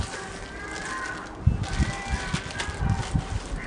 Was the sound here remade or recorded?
recorded